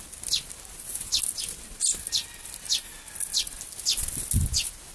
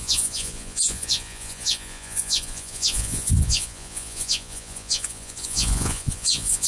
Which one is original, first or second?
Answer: first